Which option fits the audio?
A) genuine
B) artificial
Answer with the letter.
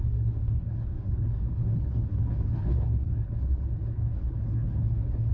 B